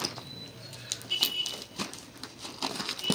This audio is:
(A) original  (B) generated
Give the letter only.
A